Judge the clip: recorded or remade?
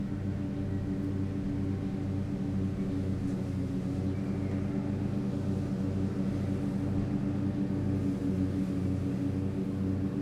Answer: recorded